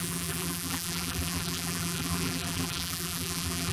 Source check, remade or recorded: remade